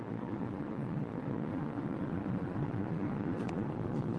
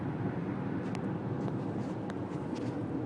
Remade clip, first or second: first